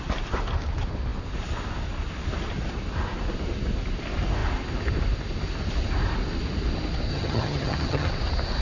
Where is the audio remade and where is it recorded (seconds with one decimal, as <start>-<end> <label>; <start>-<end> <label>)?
0.0-7.1 recorded; 7.1-8.1 remade; 8.1-8.6 recorded